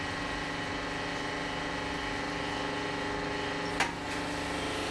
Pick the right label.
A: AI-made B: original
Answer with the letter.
B